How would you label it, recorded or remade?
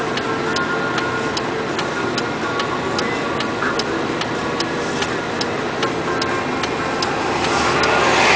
recorded